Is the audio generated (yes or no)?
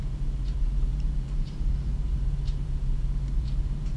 yes